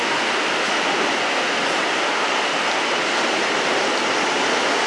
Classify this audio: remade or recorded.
recorded